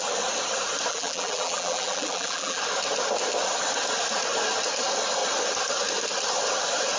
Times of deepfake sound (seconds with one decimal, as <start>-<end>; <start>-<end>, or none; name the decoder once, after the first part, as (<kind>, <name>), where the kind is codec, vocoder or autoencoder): 0.9-2.6 (vocoder, BigVGAN v2)